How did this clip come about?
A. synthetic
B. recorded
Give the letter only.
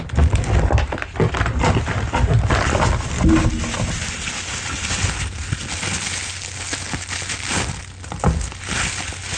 B